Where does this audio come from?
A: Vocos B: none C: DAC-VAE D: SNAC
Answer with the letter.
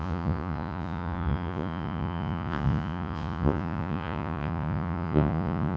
A